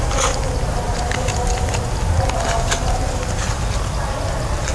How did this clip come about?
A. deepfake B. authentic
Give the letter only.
B